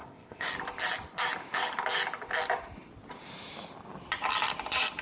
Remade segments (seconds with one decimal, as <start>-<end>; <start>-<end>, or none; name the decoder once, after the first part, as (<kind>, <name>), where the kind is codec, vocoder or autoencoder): 0.0-0.5 (codec, ZipCodec)